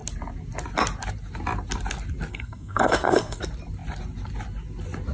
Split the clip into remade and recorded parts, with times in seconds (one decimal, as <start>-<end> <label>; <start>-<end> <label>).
0.0-2.3 recorded; 2.3-3.4 remade; 3.4-5.1 recorded